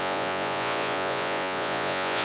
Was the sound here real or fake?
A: fake